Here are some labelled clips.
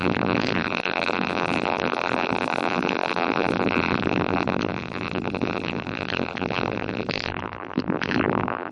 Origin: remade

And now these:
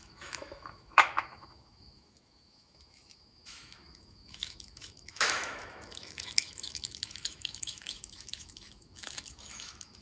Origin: remade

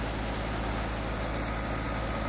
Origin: recorded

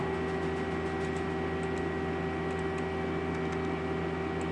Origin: recorded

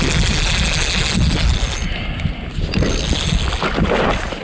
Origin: recorded